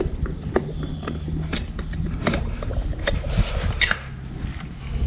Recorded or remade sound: recorded